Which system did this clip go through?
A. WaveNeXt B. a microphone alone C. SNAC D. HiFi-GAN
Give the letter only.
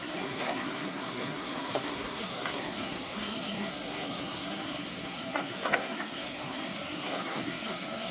C